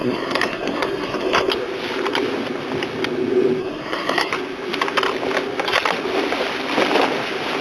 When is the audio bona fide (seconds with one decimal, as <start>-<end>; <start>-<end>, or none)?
1.5-3.6; 4.3-7.6